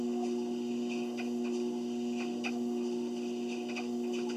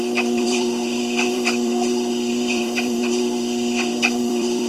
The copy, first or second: second